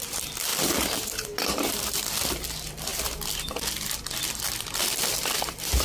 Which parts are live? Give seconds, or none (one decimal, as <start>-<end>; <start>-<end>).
2.9-4.9